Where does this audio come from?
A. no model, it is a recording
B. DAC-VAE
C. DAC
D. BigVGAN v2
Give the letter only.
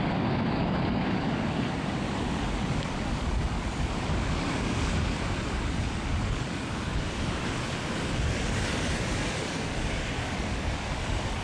C